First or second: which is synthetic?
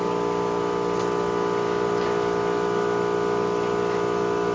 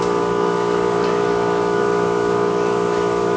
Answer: second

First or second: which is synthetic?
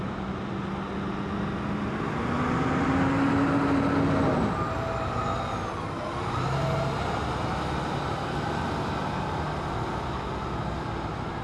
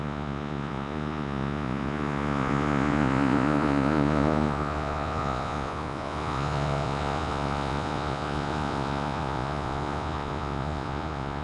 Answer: second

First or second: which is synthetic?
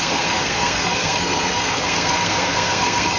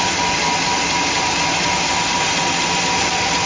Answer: first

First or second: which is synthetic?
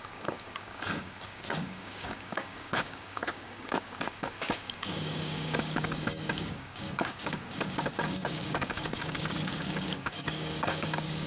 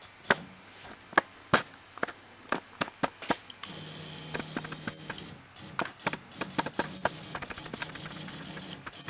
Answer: first